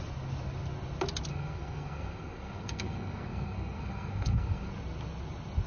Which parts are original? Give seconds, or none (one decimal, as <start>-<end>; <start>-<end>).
0.0-1.3; 4.7-5.7